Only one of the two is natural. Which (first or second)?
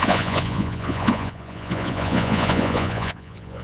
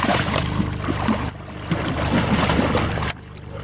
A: second